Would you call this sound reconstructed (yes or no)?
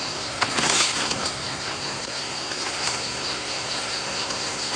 yes